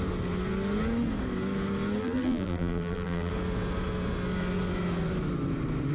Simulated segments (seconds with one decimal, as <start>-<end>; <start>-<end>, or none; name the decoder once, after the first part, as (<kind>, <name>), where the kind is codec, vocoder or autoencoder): 2.0-3.3 (vocoder, BigVGAN v2)